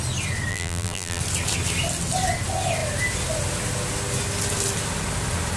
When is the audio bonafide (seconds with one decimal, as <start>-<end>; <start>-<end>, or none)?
0.0-0.5; 1.2-5.6